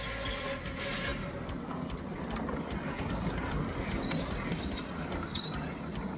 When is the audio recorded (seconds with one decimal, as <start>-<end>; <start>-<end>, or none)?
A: 0.0-6.2